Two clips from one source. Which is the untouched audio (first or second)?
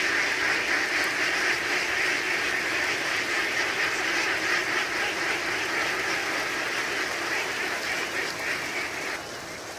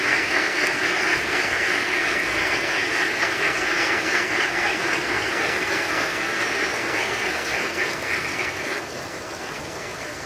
first